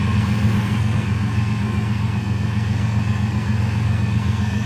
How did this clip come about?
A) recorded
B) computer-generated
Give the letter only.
B